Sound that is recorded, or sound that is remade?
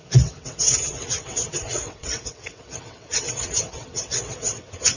remade